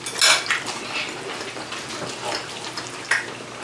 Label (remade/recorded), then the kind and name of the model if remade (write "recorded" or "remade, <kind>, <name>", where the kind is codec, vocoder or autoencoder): recorded